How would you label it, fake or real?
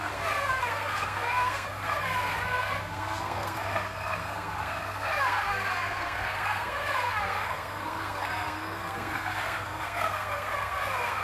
fake